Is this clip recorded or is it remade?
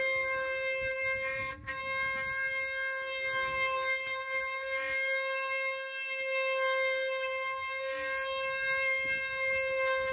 recorded